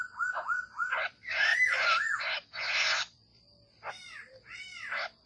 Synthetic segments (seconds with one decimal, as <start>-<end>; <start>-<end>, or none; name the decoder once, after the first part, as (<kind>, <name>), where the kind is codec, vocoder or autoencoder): 0.0-5.3 (vocoder, BigVGAN v2)